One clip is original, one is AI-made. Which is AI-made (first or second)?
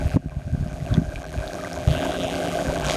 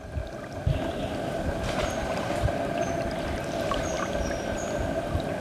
first